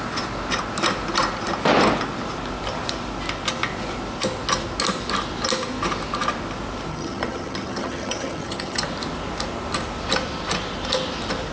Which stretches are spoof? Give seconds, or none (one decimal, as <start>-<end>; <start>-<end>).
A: 6.9-8.8